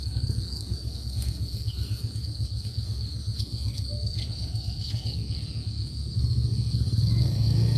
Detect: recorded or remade remade